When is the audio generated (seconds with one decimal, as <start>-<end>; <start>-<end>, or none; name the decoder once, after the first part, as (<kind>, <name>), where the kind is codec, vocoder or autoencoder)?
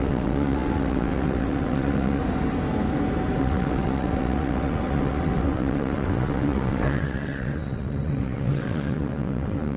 0.0-2.2 (vocoder, WaveNeXt); 3.4-9.8